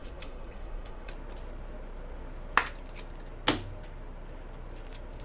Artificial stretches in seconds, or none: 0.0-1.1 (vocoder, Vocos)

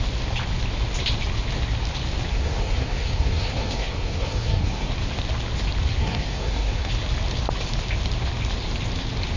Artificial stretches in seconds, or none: 2.3-4.9 (codec, SNAC); 6.0-6.9

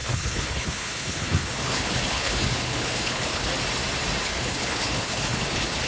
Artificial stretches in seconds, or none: 0.0-3.5 (codec, HILCodec); 4.2-5.9

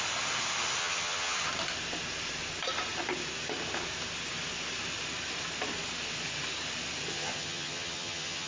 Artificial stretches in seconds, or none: 0.8-1.5 (vocoder, HiFi-GAN); 7.1-8.5

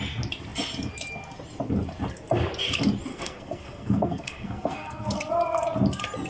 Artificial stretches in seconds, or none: 3.1-5.3 (codec, SNAC)

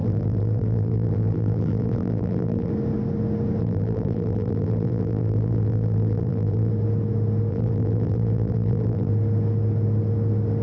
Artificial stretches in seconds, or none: 0.0-2.7 (vocoder, BigVGAN v2); 3.6-6.7; 7.5-9.1

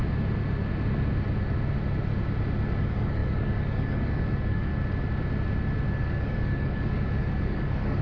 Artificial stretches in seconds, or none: 2.8-4.7 (codec, DAC); 5.9-8.0